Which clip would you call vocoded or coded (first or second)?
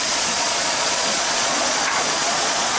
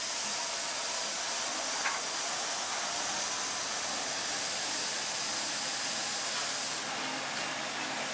first